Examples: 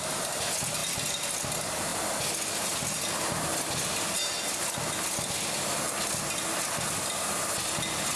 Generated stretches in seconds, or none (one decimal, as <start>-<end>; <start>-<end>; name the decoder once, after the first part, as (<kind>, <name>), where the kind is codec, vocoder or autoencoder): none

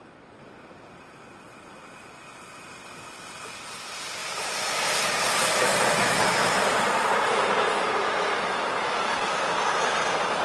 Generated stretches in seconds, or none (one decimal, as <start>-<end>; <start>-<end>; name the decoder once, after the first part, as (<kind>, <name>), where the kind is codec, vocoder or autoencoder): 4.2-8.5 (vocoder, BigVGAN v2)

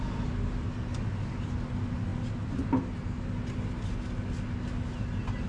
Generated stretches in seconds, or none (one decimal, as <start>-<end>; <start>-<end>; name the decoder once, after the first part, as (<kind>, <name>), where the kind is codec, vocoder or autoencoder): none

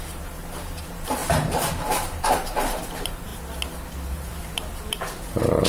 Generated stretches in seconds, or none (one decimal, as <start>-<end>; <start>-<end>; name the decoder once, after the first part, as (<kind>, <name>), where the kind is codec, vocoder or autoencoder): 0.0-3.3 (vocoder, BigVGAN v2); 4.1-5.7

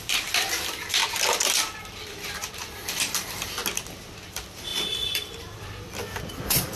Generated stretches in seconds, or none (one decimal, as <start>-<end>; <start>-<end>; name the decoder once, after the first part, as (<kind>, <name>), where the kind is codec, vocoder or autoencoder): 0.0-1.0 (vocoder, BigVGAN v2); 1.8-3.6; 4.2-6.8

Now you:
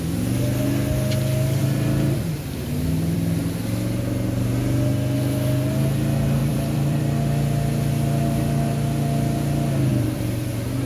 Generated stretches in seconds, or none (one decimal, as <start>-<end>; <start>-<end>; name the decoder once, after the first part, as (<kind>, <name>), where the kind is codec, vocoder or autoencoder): 1.6-3.4 (vocoder, BigVGAN v2); 6.4-7.0; 9.9-10.5

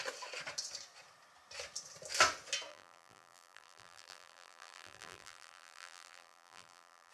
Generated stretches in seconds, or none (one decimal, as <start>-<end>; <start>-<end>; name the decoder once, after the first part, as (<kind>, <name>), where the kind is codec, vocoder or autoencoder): 2.7-7.1 (vocoder, BigVGAN v2)

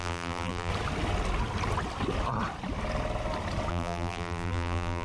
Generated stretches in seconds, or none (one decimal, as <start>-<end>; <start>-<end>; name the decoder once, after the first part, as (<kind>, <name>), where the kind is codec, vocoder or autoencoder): 0.0-0.7 (vocoder, BigVGAN v2); 3.7-5.0